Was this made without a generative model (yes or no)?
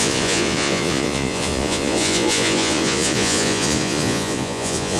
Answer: no